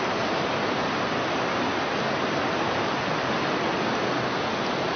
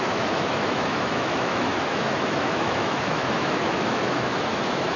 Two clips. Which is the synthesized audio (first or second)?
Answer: second